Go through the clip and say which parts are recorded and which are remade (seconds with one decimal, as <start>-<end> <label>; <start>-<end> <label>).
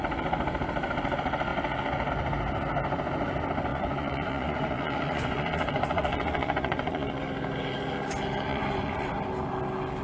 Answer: 0.0-3.7 recorded; 3.7-7.2 remade; 7.2-8.5 recorded; 8.5-9.1 remade; 9.1-10.0 recorded